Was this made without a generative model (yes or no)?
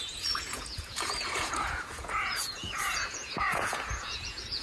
no